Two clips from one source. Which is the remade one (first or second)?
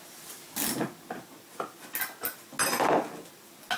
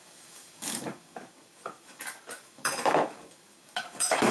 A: second